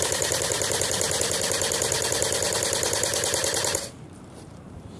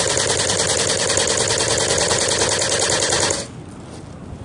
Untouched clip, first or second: second